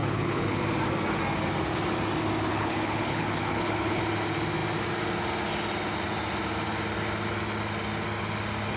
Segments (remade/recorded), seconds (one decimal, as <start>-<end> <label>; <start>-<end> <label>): 0.0-0.6 remade; 0.6-2.5 recorded; 2.5-4.0 remade; 4.0-8.8 recorded